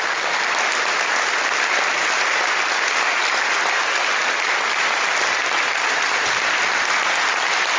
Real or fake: real